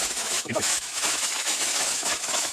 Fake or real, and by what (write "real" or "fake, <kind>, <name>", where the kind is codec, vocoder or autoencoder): fake, autoencoder, DAC-VAE